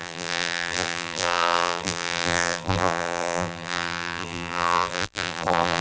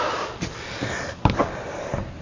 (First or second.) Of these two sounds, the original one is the second